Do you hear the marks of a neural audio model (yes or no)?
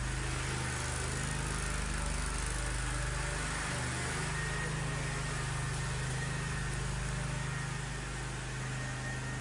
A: no